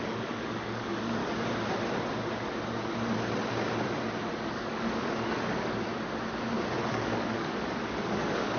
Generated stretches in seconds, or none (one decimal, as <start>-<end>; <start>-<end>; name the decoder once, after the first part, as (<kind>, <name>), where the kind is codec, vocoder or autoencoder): 0.0-1.2 (codec, DAC); 4.5-5.9; 6.8-8.6